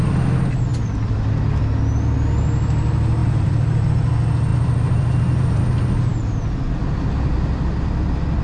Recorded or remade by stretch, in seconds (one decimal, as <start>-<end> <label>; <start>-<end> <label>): 0.0-3.2 recorded; 3.2-3.9 remade; 3.9-4.5 recorded; 4.5-5.6 remade; 5.6-8.4 recorded